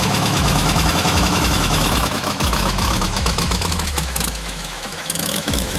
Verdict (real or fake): fake